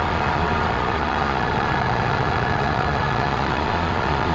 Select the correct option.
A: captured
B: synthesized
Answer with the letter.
B